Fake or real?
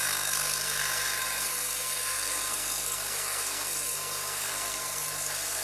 fake